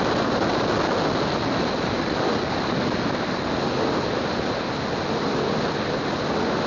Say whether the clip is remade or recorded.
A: recorded